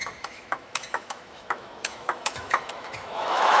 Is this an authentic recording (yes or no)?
no